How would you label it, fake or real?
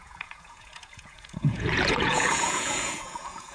fake